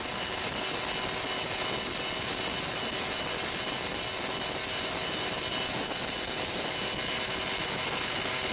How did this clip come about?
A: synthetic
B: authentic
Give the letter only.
B